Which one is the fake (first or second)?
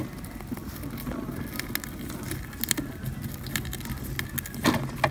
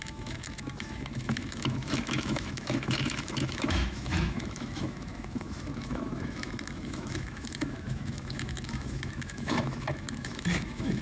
second